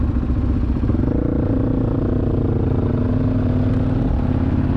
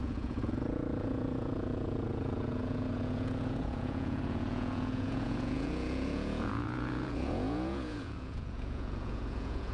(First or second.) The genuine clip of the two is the first